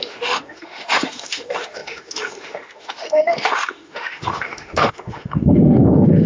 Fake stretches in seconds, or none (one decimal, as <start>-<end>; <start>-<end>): 0.0-6.3